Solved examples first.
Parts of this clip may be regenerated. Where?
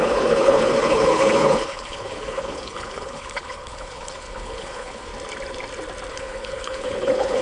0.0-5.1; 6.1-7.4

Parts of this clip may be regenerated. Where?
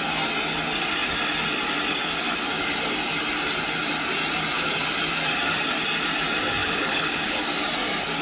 6.6-7.4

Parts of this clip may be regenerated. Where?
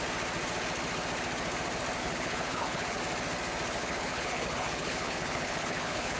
2.0-3.0; 3.8-6.2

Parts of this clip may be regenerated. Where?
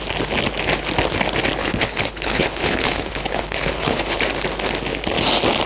1.6-4.2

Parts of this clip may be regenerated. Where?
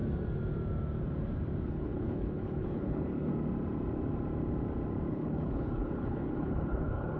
1.7-3.3; 5.1-7.2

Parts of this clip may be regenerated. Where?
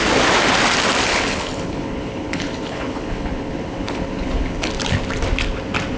1.1-4.7